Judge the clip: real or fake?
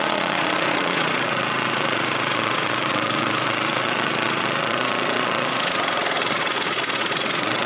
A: fake